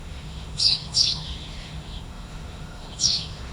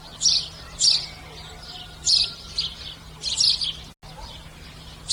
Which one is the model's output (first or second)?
first